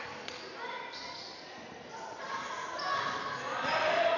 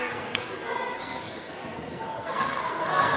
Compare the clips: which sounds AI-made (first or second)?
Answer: second